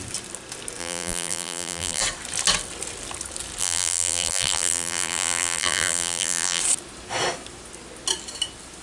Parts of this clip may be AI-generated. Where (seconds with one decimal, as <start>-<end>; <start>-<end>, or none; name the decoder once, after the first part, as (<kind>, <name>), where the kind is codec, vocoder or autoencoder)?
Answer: 0.8-2.0 (vocoder, BigVGAN v2); 3.6-6.6